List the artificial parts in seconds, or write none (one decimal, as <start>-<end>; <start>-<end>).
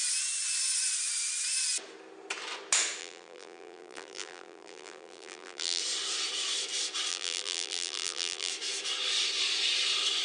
3.0-5.8; 7.1-8.5